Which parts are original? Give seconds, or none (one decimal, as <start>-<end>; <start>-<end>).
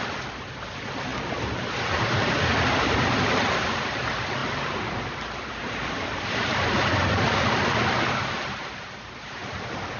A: 0.0-10.0